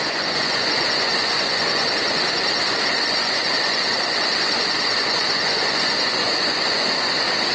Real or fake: fake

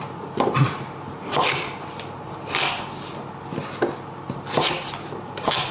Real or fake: real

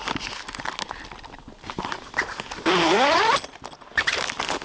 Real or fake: real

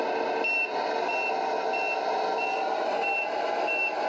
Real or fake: real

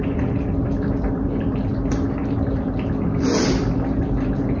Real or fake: real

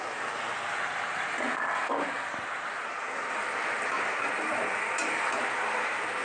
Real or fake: real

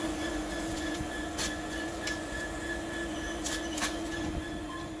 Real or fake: fake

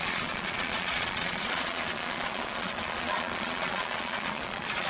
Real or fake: fake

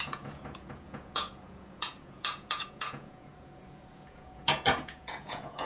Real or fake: fake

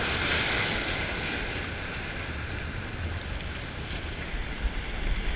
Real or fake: real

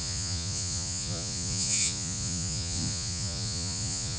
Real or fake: fake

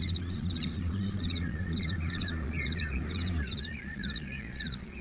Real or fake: fake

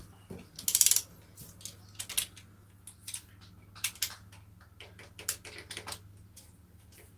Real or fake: real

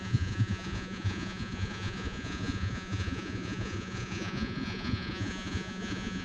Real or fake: fake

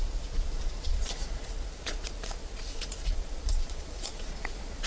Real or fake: fake